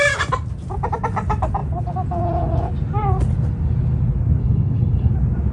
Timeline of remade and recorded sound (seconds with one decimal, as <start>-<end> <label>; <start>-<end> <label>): 0.0-4.4 recorded; 4.4-5.1 remade; 5.1-5.5 recorded

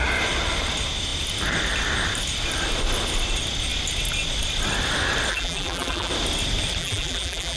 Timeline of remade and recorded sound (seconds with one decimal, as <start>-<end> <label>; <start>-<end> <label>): 0.0-5.3 recorded; 5.3-6.1 remade; 6.1-6.8 recorded; 6.8-7.6 remade